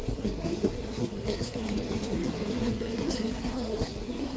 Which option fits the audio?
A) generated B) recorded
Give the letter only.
A